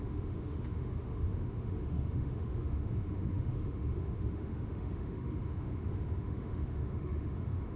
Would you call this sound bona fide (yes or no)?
no